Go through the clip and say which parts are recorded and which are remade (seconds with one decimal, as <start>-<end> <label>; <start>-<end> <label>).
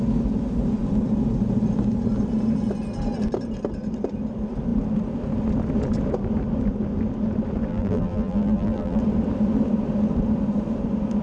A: 0.0-7.7 recorded; 7.7-9.0 remade; 9.0-11.2 recorded